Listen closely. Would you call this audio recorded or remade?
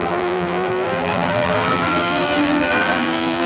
remade